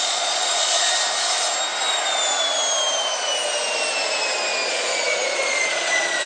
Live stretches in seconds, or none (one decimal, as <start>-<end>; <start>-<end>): 0.9-4.7